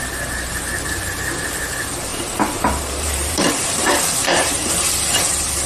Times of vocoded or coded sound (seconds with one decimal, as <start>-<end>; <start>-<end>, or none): 2.1-5.3